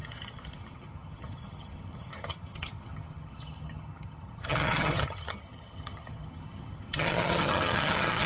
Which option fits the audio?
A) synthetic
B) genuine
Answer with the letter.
A